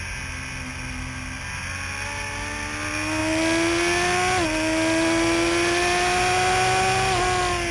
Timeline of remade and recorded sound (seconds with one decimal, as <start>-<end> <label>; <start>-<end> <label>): 0.0-7.7 recorded